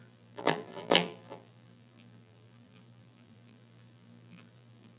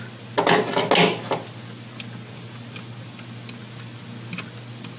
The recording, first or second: second